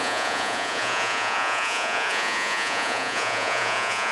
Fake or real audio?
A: fake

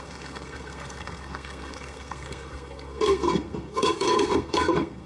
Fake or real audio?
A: fake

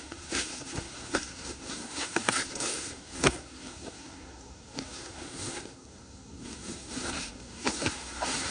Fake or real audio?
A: fake